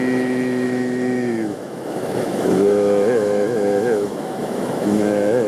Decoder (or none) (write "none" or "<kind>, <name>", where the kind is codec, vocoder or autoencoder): autoencoder, DAC-VAE